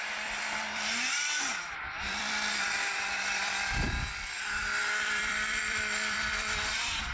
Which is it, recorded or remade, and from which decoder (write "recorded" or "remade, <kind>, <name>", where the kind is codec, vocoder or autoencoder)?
remade, vocoder, BigVGAN v2